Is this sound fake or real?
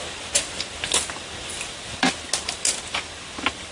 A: real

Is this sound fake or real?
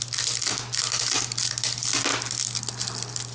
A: real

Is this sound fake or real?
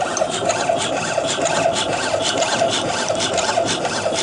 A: real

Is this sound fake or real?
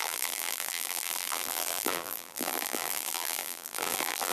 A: fake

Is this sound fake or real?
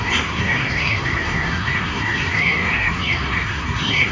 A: fake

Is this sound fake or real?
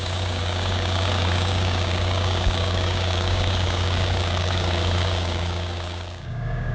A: fake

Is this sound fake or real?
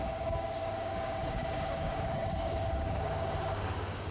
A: fake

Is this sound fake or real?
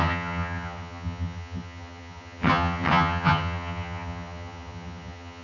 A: fake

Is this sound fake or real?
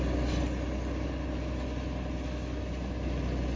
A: real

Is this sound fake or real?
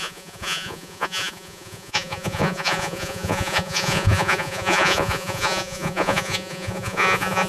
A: fake